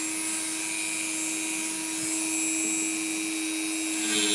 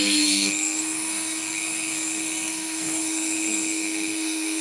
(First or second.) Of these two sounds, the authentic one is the first